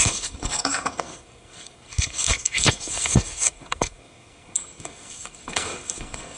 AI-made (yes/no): yes